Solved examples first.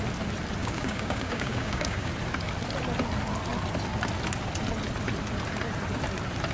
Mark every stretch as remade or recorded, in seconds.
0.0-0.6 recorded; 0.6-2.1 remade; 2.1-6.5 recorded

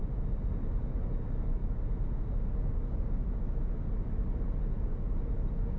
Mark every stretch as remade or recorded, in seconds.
0.0-5.8 recorded

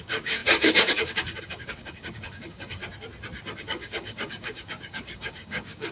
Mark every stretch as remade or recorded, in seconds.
0.0-2.8 remade; 2.8-3.6 recorded; 3.6-5.9 remade

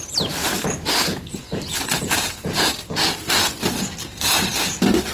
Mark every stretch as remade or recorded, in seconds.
0.0-0.4 recorded; 0.4-2.7 remade; 2.7-5.1 recorded

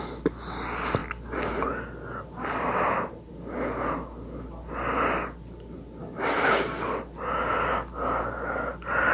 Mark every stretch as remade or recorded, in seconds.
0.0-9.1 recorded

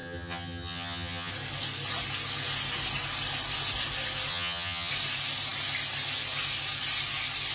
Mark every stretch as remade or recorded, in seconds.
0.0-1.3 remade; 1.3-4.3 recorded; 4.3-4.9 remade; 4.9-7.5 recorded

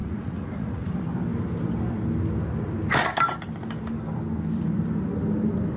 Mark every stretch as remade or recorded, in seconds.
0.0-0.9 remade; 0.9-5.8 recorded

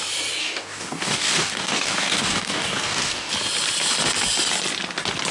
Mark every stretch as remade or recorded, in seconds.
0.0-0.4 recorded; 0.4-3.3 remade; 3.3-5.3 recorded